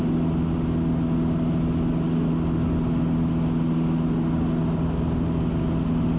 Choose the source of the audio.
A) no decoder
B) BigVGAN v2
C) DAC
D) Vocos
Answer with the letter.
A